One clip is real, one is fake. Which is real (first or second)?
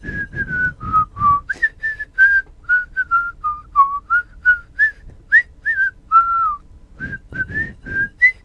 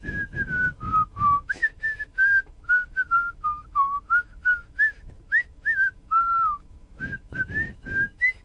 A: first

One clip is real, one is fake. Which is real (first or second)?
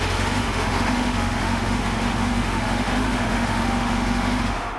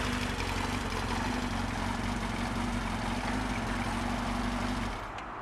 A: second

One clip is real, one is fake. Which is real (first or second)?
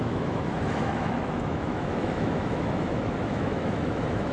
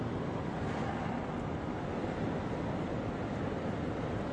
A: second